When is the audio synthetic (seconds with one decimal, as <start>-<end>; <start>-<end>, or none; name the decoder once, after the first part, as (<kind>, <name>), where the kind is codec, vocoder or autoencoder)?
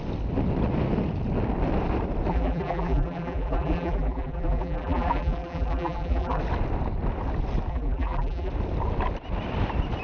2.3-6.4 (vocoder, BigVGAN v2); 7.7-8.5